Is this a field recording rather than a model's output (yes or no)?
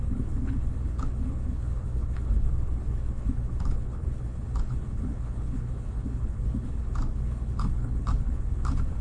no